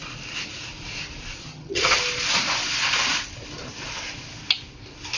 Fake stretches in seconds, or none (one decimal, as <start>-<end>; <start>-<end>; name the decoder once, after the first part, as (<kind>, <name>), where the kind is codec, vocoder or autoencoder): 1.4-2.0 (vocoder, HiFi-GAN)